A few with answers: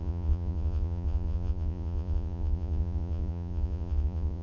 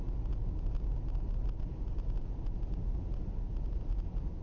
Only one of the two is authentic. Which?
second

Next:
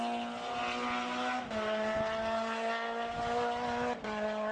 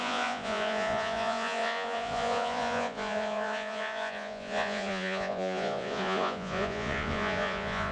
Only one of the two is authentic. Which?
first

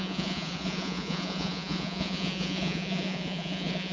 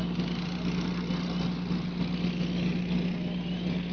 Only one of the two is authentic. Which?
second